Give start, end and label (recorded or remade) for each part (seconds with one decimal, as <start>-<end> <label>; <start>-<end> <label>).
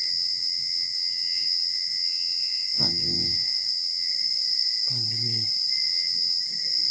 0.0-4.1 remade; 4.1-5.9 recorded; 5.9-6.4 remade; 6.4-6.9 recorded